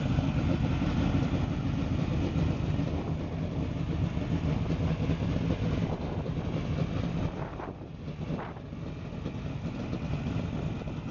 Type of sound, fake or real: real